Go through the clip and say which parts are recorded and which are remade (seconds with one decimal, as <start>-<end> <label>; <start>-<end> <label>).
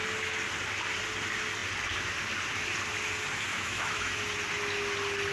0.0-3.5 recorded; 3.5-4.2 remade; 4.2-5.3 recorded